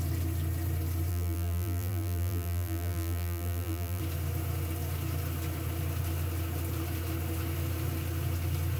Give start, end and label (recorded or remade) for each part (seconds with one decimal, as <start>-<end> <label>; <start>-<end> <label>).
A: 0.0-1.1 recorded; 1.1-4.0 remade; 4.0-8.8 recorded